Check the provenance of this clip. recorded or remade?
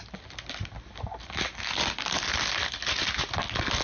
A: recorded